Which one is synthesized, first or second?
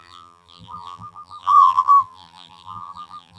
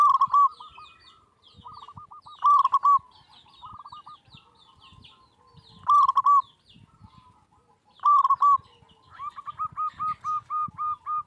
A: first